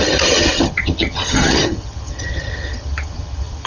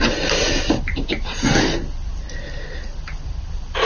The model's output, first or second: first